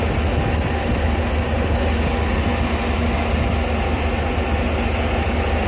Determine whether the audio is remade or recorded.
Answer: recorded